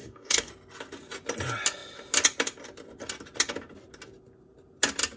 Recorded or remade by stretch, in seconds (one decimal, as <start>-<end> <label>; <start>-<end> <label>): 0.0-0.5 remade; 0.5-5.2 recorded